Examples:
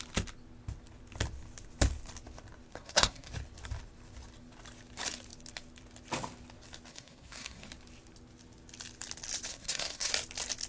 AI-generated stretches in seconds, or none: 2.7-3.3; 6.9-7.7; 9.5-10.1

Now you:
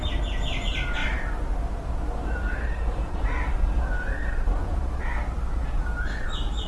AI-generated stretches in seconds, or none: none

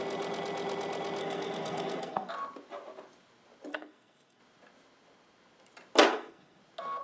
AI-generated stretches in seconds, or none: 1.2-2.3; 3.7-4.4; 6.1-6.6

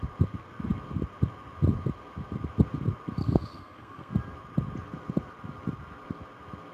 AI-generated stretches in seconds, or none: 3.2-4.1